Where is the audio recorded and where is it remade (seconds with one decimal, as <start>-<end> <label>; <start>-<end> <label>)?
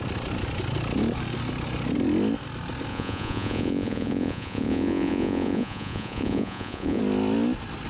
0.0-2.9 recorded; 2.9-7.0 remade; 7.0-7.9 recorded